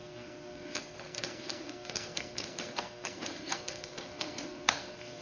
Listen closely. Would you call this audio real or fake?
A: fake